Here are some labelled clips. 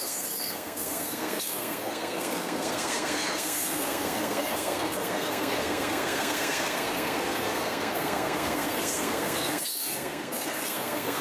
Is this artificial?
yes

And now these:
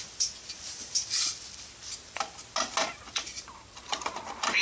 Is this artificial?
no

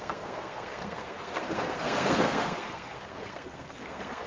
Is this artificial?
yes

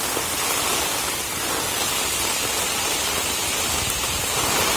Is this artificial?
no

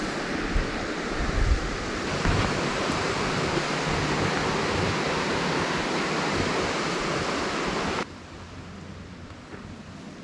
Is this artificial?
no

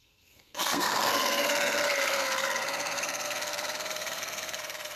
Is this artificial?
yes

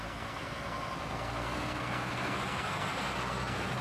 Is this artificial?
yes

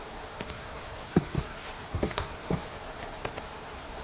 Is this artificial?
yes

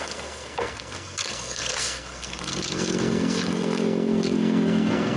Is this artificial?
yes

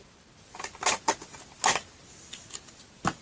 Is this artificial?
no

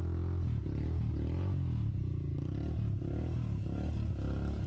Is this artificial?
no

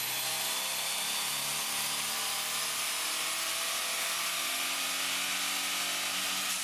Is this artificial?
no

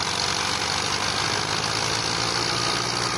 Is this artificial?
no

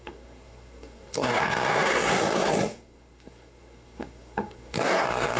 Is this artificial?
yes